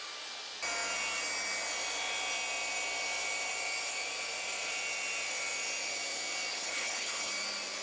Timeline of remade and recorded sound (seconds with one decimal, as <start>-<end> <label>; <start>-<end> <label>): 0.0-6.5 recorded; 6.5-7.3 remade; 7.3-7.8 recorded